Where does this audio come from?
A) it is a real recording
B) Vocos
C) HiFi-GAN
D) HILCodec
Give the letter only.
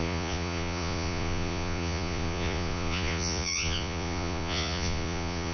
B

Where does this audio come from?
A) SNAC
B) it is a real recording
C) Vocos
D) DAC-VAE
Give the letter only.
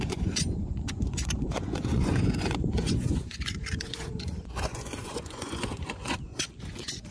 C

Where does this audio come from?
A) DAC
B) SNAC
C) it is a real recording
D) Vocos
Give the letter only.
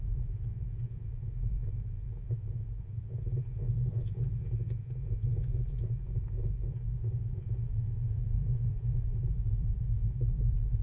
D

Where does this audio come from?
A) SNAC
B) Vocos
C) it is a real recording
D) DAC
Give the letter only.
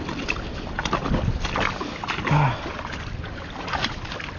C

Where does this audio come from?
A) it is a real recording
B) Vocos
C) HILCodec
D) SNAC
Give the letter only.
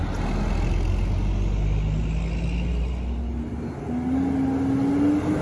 A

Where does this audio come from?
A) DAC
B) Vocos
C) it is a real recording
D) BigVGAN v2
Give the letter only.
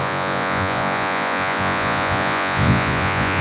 B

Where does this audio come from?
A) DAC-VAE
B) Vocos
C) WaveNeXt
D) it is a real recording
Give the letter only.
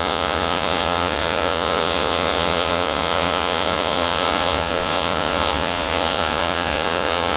B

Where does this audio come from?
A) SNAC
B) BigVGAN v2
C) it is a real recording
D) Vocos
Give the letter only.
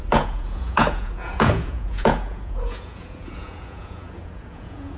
D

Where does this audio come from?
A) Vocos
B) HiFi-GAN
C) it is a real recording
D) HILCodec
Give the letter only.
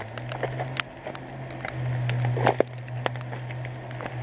C